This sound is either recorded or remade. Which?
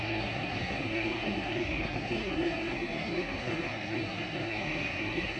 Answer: remade